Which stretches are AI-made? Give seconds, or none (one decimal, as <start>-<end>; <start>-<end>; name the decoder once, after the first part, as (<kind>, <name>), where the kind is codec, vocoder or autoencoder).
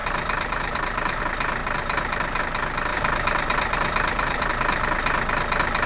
0.0-1.2 (vocoder, BigVGAN v2); 1.6-2.4; 2.9-4.5